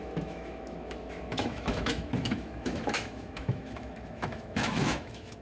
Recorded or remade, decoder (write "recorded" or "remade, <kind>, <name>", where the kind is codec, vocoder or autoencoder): remade, autoencoder, DAC-VAE